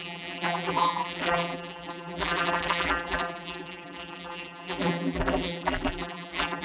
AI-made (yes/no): yes